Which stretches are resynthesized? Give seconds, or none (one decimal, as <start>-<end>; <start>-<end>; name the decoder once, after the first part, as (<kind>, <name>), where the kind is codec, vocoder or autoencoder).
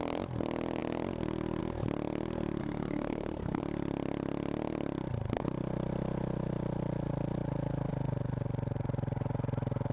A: 2.6-3.6 (codec, SNAC)